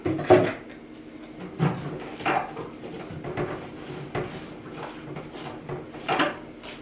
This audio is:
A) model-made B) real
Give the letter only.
B